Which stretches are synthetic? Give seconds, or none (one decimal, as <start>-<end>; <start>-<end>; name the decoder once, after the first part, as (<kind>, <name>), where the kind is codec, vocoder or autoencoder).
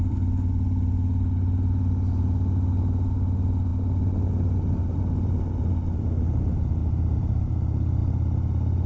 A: 6.8-7.5 (vocoder, BigVGAN v2)